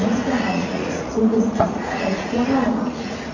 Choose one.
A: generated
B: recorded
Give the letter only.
A